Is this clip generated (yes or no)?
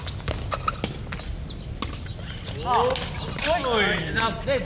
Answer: no